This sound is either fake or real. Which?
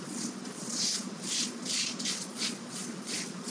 fake